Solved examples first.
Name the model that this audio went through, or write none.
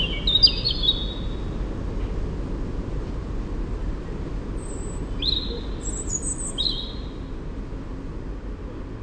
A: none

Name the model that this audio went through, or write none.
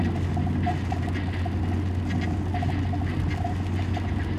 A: none